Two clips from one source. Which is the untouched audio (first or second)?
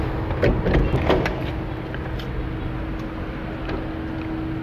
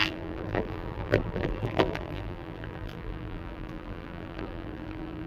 first